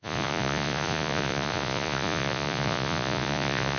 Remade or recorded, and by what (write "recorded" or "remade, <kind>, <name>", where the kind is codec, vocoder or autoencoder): remade, vocoder, Vocos